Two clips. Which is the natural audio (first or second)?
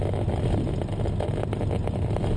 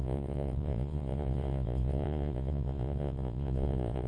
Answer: first